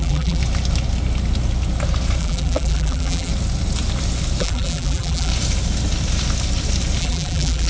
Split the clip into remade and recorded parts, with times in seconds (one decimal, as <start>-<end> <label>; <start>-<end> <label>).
0.0-0.4 remade; 0.4-2.2 recorded; 2.2-3.3 remade; 3.3-4.4 recorded; 4.4-5.3 remade; 5.3-7.0 recorded; 7.0-7.7 remade